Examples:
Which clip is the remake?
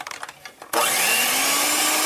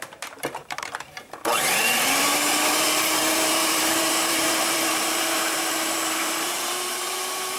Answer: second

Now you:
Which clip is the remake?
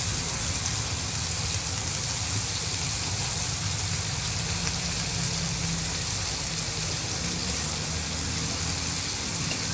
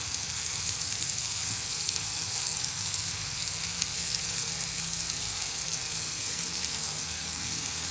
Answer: second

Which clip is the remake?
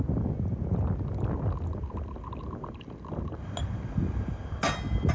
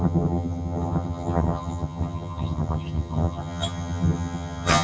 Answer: second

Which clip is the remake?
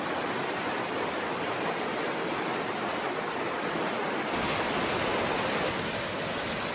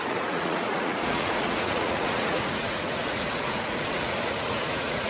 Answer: second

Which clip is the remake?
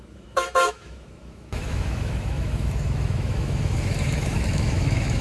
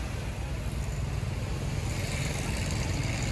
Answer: first